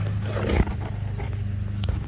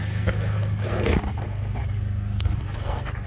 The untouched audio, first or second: first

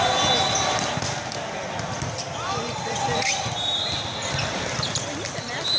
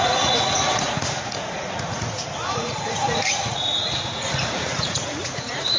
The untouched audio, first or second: first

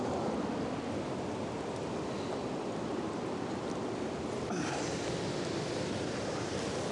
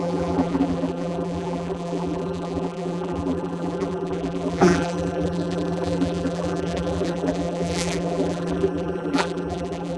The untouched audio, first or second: first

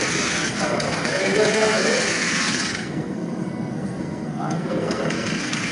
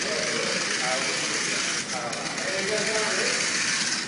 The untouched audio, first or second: second